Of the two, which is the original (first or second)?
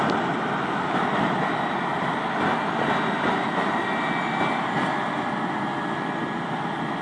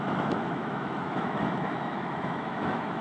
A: first